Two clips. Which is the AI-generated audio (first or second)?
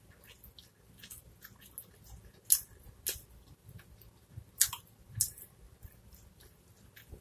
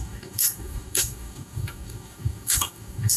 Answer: second